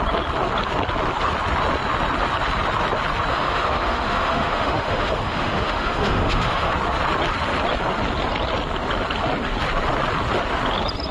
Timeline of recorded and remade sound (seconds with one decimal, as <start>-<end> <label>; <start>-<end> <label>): 0.0-3.3 recorded; 3.3-6.7 remade; 6.7-11.1 recorded